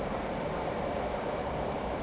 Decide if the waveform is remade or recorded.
recorded